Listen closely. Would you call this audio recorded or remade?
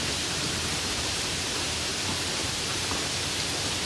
remade